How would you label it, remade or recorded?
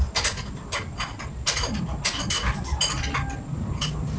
recorded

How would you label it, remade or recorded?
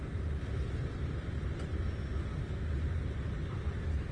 recorded